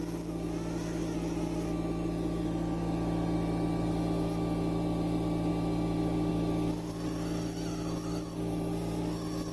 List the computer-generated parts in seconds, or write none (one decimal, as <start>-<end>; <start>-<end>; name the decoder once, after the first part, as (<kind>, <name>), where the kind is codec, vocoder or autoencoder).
none